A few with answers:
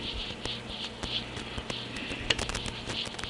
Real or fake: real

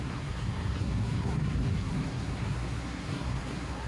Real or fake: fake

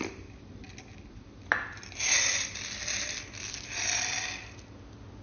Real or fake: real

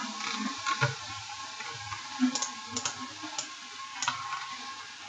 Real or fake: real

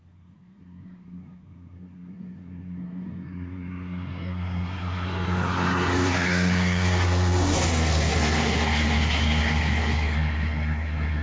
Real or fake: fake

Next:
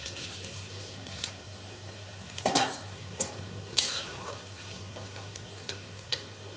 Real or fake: fake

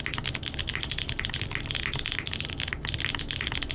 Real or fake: real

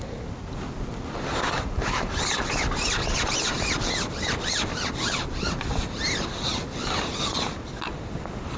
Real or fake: real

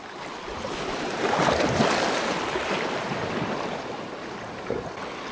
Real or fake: real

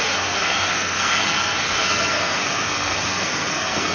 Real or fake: fake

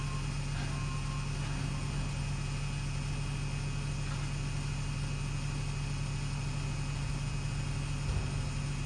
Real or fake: real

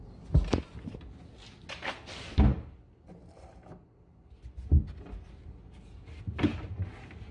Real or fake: real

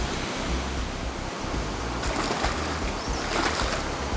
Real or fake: real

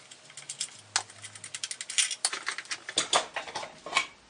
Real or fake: real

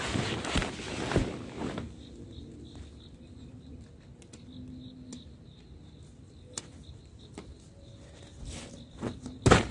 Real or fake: real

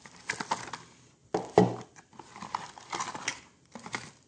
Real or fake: real